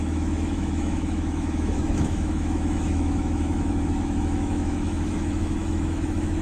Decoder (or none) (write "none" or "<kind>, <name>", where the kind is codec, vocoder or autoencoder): autoencoder, DAC-VAE